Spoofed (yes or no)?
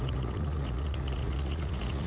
yes